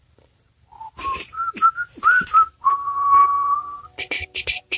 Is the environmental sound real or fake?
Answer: fake